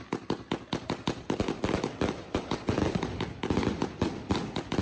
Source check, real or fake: real